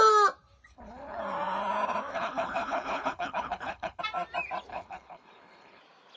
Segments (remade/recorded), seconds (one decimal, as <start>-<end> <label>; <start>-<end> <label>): 0.0-0.7 recorded; 0.7-1.2 remade; 1.2-2.1 recorded; 2.1-4.0 remade; 4.0-4.7 recorded; 4.7-5.8 remade; 5.8-6.2 recorded